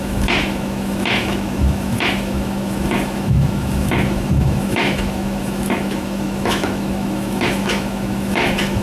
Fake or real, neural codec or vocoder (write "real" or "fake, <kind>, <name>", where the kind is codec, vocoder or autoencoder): fake, autoencoder, DAC-VAE